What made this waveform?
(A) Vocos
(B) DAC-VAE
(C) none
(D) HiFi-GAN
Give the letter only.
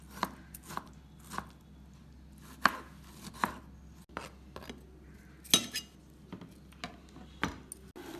C